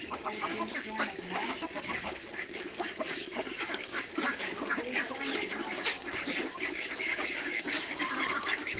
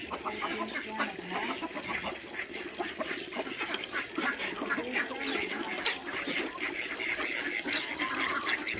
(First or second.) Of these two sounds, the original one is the second